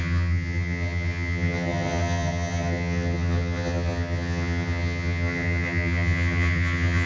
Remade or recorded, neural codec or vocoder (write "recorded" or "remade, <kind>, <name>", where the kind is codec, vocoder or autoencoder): remade, vocoder, HiFi-GAN